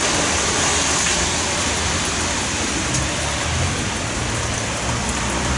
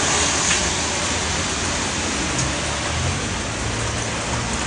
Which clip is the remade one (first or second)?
first